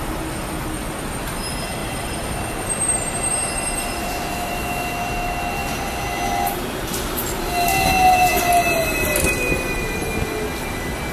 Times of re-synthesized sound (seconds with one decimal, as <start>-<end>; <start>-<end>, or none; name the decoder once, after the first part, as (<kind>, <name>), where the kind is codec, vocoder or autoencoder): 1.8-5.0 (vocoder, BigVGAN v2)